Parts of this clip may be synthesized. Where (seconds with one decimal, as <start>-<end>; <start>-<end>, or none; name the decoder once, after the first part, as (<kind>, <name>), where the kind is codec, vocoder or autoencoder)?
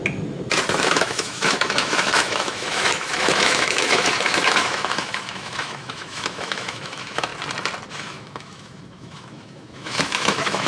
0.8-7.3 (autoencoder, DAC-VAE); 7.9-10.7